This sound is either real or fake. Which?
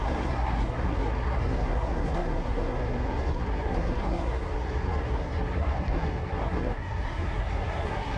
fake